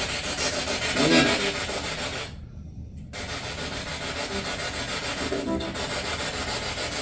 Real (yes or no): yes